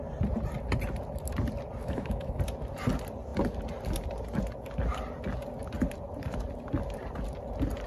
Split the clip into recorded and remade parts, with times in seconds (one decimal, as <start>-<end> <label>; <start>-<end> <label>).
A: 0.0-1.8 recorded; 1.8-2.4 remade; 2.4-7.9 recorded